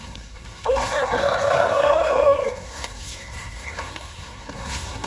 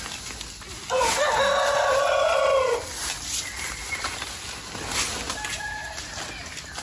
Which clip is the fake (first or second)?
first